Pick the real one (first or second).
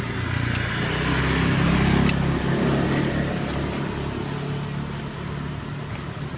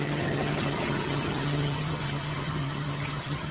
first